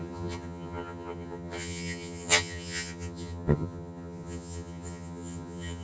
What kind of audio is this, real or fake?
fake